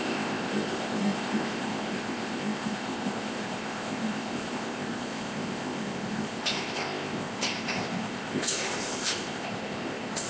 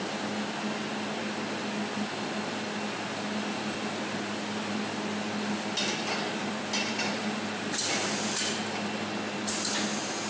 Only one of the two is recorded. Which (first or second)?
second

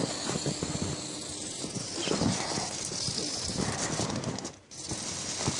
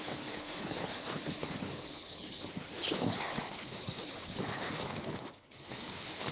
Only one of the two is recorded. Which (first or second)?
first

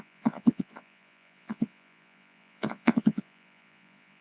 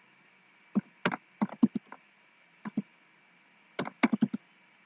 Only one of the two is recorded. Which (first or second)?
second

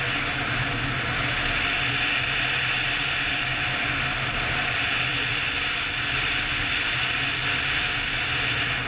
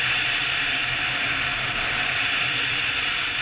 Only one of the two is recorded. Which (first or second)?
first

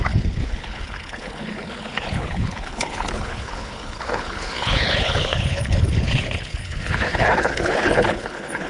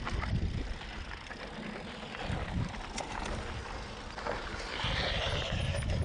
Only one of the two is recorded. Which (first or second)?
second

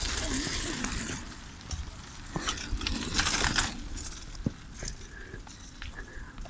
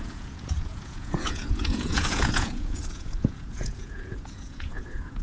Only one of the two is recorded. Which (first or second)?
first